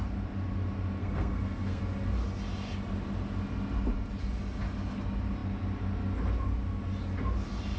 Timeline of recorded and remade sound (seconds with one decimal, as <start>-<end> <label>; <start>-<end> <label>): 0.0-1.0 recorded; 1.0-1.8 remade; 1.8-7.8 recorded